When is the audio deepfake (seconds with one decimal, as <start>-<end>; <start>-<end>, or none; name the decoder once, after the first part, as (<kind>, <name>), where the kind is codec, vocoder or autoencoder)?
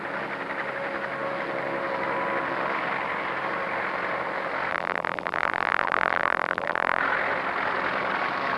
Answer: 4.7-7.0 (vocoder, BigVGAN v2)